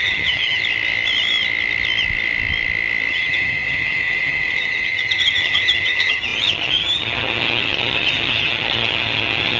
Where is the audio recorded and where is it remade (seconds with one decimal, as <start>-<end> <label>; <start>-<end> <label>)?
0.0-0.6 remade; 0.6-3.1 recorded; 3.1-9.6 remade